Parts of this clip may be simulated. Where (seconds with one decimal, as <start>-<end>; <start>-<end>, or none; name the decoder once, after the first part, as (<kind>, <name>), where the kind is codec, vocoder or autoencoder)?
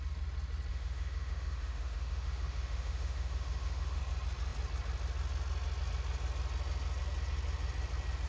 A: 0.7-4.0 (autoencoder, DAC-VAE)